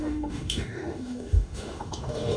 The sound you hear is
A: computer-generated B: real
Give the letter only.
A